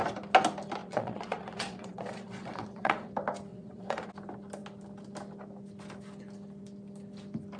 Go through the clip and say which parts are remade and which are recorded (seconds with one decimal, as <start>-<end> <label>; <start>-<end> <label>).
0.0-0.8 recorded; 0.8-3.1 remade; 3.1-3.5 recorded; 3.5-4.1 remade; 4.1-7.6 recorded